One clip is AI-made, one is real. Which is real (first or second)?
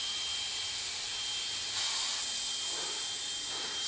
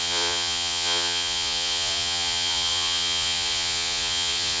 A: first